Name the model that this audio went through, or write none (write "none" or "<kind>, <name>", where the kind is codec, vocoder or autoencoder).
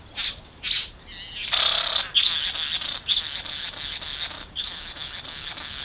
none